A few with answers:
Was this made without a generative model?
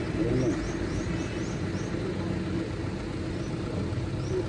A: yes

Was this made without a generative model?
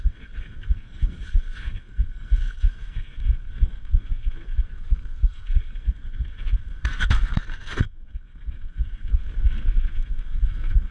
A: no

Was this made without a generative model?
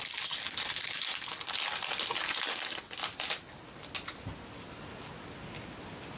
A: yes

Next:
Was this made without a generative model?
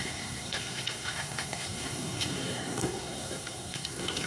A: no